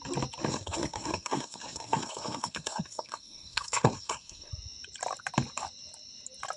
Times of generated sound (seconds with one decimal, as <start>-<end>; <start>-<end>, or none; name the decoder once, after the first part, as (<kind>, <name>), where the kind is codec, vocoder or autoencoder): 0.5-4.5 (codec, SNAC)